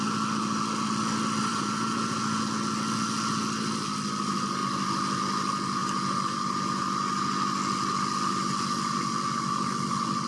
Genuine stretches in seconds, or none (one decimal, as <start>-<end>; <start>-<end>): 0.0-1.5; 2.4-10.3